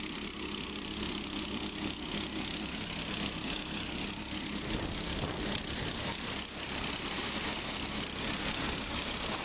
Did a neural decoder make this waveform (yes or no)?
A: no